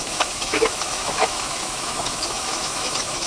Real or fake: fake